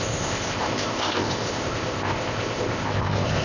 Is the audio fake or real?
fake